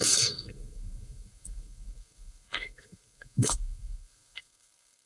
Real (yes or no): no